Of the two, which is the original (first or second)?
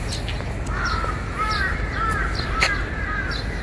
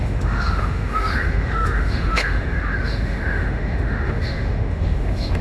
first